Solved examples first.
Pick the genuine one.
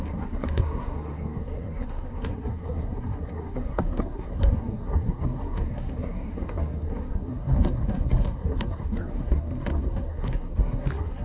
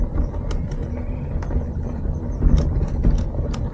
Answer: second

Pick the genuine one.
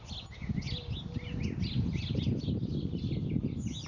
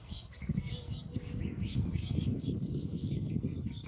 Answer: first